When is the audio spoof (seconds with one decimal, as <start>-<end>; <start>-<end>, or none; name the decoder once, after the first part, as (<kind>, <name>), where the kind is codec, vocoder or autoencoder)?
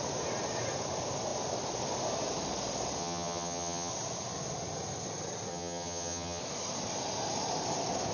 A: 3.0-3.9 (vocoder, HiFi-GAN); 5.5-6.4